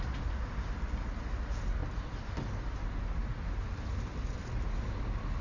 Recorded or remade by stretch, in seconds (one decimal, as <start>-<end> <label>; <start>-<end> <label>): 0.0-5.4 recorded